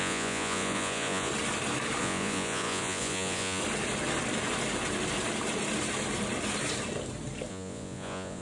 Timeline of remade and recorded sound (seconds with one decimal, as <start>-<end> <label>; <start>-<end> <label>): 0.0-1.3 remade; 1.3-2.0 recorded; 2.0-3.6 remade; 3.6-7.5 recorded; 7.5-8.4 remade